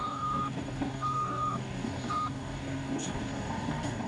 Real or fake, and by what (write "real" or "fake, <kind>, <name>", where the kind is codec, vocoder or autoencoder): fake, codec, DAC